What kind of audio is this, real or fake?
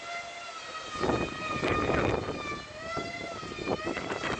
real